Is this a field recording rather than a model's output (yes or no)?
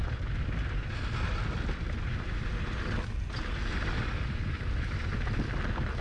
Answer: yes